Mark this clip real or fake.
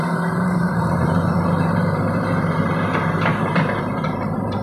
fake